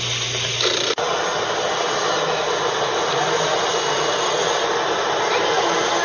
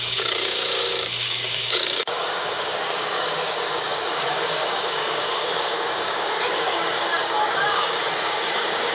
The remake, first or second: second